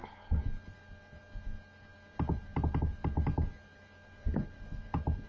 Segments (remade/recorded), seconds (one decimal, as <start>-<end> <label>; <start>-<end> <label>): 0.0-1.9 recorded; 1.9-5.3 remade